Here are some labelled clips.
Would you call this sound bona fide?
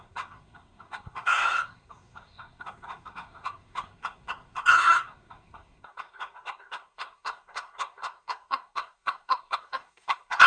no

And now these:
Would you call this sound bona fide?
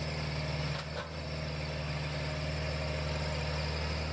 yes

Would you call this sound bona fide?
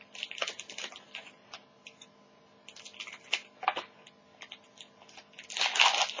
yes